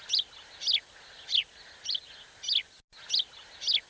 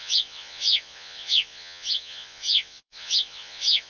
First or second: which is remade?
second